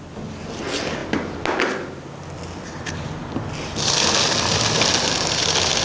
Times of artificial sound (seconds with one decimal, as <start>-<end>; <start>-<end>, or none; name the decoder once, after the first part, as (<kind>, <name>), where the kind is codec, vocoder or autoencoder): none